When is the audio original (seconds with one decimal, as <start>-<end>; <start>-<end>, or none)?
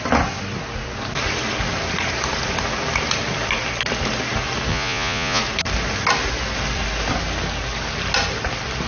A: 0.0-4.7; 5.4-8.9